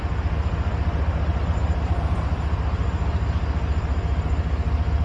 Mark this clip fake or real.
real